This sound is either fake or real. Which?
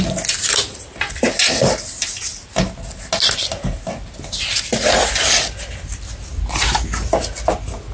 real